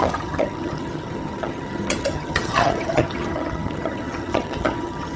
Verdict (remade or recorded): remade